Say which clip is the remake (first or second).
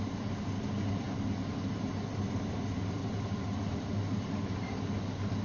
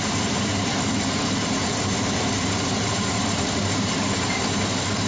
second